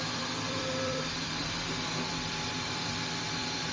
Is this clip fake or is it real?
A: fake